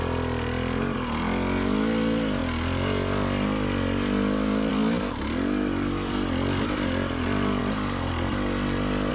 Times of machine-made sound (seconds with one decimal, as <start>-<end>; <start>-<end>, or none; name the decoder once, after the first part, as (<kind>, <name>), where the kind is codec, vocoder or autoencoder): none